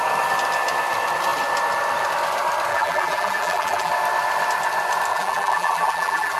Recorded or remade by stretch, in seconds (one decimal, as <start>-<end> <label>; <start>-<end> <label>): 0.0-2.7 recorded; 2.7-3.9 remade; 3.9-5.1 recorded; 5.1-6.4 remade